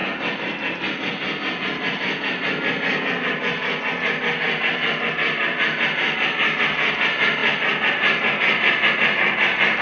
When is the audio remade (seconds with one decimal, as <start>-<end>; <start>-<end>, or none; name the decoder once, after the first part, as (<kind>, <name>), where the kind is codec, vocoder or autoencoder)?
none